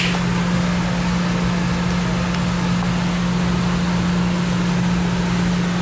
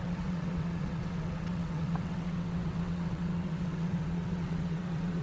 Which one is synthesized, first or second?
second